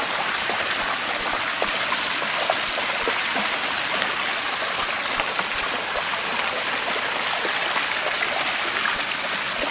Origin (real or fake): real